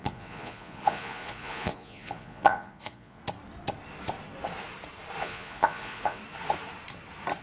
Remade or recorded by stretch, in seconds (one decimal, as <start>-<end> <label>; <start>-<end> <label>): 0.0-3.2 remade; 3.2-5.2 recorded; 5.2-6.2 remade; 6.2-7.4 recorded